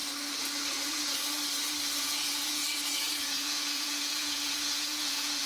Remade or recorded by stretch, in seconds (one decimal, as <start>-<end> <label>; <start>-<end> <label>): 0.0-2.0 recorded; 2.0-2.6 remade; 2.6-3.3 recorded; 3.3-5.5 remade